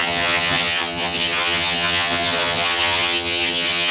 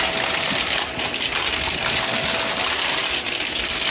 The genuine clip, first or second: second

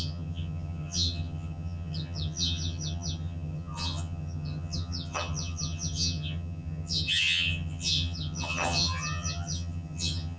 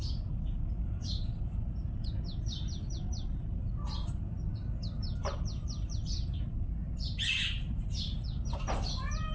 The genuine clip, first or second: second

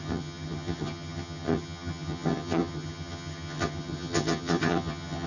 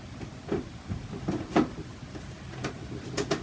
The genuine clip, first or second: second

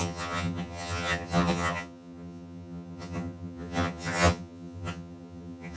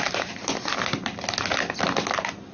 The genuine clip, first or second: second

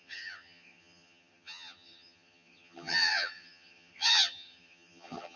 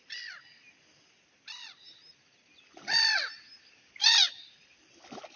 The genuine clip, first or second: second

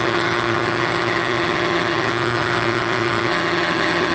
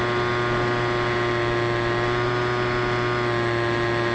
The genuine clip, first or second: second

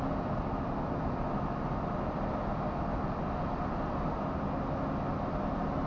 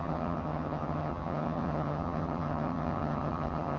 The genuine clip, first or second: first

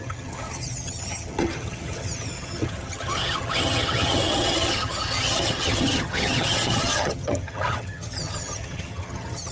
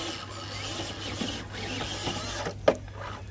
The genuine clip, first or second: second